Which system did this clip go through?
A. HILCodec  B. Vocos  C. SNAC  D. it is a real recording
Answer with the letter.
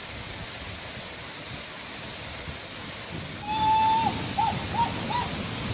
D